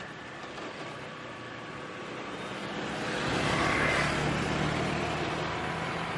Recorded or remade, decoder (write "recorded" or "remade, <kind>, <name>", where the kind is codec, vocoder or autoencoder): recorded